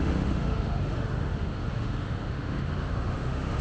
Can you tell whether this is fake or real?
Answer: fake